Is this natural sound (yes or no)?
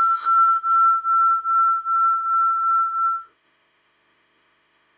no